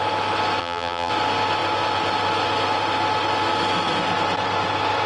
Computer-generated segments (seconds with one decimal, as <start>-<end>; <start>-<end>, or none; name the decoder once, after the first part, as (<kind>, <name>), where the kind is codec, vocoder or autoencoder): 0.6-1.1 (vocoder, BigVGAN v2)